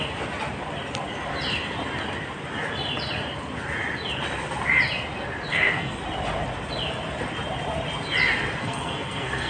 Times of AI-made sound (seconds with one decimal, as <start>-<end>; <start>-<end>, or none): 5.5-6.0; 8.6-9.5